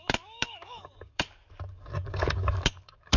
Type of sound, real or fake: fake